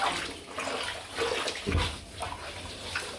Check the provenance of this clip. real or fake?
real